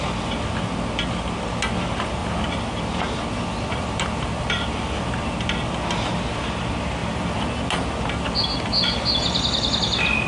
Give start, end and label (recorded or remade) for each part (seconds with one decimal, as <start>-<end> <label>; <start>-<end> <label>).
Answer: 0.0-2.2 recorded; 2.2-5.1 remade; 5.1-7.0 recorded; 7.0-7.6 remade; 7.6-10.3 recorded